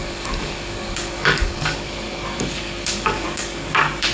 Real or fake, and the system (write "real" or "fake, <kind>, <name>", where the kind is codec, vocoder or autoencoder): fake, codec, DAC